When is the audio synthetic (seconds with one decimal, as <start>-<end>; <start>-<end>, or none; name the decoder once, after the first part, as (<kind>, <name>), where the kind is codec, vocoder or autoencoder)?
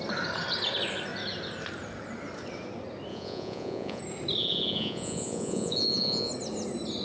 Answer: 3.1-4.0 (vocoder, Vocos); 4.4-6.3